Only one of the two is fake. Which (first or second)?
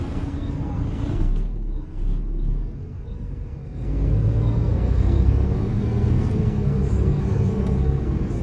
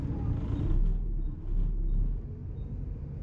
first